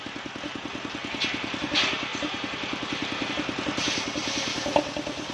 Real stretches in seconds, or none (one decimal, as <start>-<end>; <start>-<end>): 0.0-2.1; 3.3-5.3